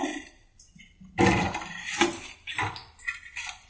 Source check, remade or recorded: remade